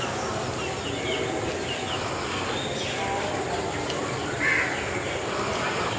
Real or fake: real